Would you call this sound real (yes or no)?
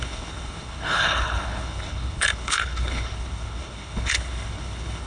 no